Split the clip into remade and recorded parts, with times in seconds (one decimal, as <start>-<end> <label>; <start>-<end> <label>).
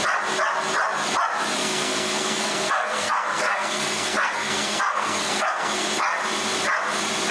0.0-1.6 recorded; 1.6-5.9 remade; 5.9-7.3 recorded